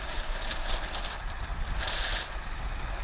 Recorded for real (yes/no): yes